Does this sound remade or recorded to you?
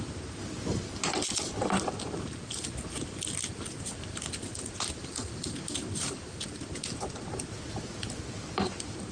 recorded